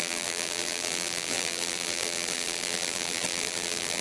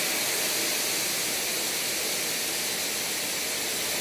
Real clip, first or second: second